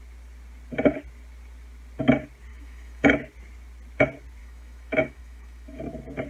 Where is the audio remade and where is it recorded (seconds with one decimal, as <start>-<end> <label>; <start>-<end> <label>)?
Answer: 0.0-2.5 recorded; 2.5-3.1 remade; 3.1-4.4 recorded; 4.4-5.8 remade; 5.8-6.3 recorded